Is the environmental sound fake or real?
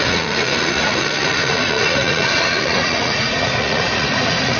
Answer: fake